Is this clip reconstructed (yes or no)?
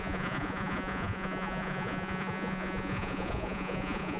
yes